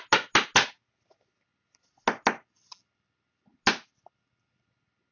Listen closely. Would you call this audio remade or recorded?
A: recorded